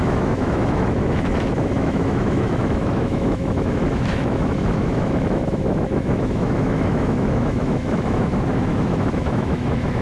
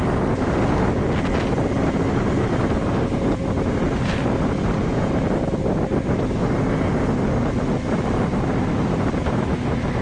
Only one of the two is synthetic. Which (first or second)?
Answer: first